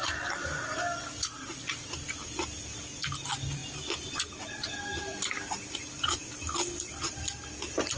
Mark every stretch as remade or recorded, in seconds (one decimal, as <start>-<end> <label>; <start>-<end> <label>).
0.0-8.0 recorded